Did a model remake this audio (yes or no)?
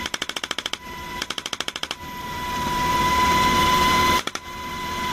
yes